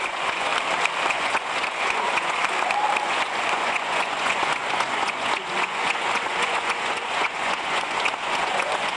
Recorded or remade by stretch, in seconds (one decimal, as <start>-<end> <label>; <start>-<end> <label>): 0.0-0.5 remade; 0.5-1.1 recorded; 1.1-2.4 remade; 2.4-3.0 recorded; 3.0-9.0 remade